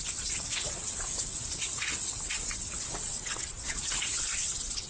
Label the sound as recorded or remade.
remade